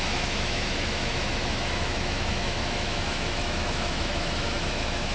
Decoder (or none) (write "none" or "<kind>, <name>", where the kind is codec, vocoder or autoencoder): autoencoder, DAC-VAE